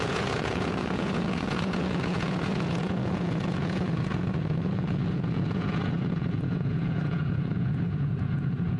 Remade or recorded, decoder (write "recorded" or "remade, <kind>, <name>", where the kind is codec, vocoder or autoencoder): remade, vocoder, Vocos